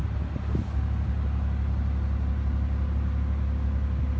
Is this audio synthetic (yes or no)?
no